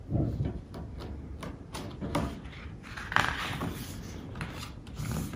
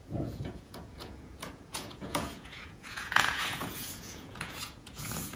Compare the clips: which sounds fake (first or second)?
second